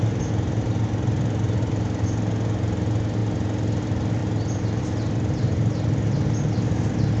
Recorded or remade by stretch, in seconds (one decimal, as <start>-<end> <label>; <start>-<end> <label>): 0.0-7.2 recorded